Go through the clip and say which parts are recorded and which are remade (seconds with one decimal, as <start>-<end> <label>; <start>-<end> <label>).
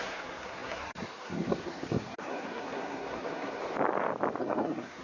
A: 0.0-3.6 remade; 3.6-4.4 recorded; 4.4-5.0 remade